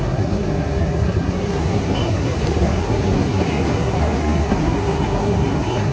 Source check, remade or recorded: remade